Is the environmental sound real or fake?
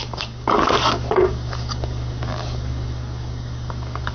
fake